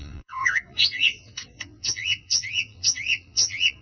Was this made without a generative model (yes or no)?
no